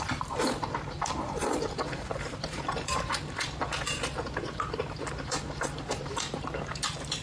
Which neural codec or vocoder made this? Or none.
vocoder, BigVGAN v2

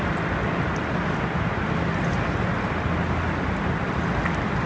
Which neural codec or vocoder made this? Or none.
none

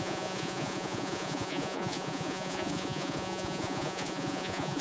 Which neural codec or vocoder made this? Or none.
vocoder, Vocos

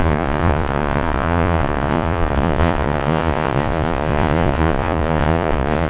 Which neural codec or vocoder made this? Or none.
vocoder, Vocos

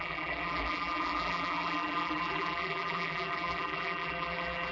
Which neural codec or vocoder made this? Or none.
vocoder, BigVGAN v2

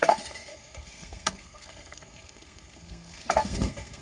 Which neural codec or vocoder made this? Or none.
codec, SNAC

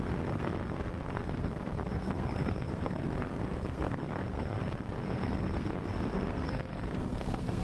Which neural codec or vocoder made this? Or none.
codec, SNAC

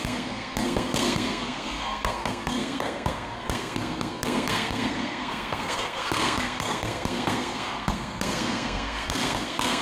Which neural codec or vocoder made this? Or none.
codec, SNAC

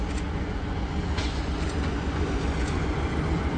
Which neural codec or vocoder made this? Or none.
vocoder, Vocos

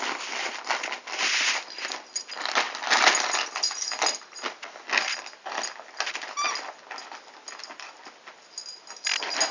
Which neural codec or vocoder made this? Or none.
none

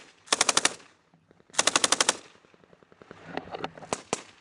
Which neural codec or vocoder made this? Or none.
none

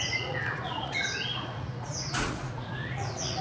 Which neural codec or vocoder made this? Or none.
vocoder, Vocos